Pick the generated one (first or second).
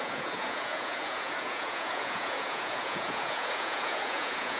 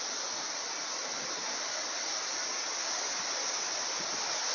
first